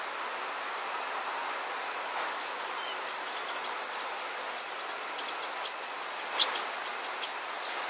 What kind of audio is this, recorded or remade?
recorded